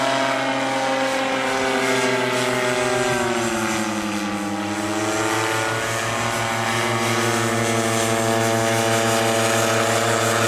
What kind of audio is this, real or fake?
real